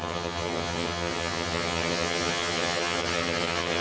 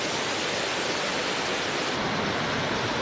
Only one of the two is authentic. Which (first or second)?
second